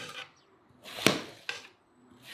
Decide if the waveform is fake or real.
real